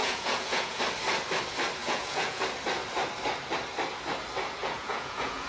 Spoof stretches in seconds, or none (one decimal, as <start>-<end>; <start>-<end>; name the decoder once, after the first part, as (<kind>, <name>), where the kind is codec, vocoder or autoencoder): 0.0-0.8 (vocoder, Vocos); 1.8-2.4; 4.6-5.5